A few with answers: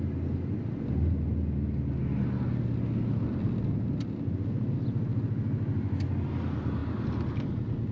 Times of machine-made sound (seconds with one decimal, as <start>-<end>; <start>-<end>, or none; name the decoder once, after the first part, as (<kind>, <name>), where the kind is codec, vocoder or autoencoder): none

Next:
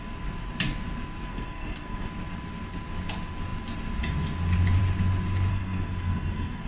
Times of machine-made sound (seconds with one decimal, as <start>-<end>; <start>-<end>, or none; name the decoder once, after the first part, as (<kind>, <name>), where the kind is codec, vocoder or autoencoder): 1.3-2.1 (codec, SNAC); 5.5-6.7

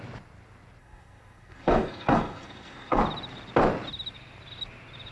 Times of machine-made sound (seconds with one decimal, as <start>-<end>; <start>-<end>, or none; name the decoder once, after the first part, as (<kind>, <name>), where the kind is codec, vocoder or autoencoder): 0.8-3.0 (codec, SNAC)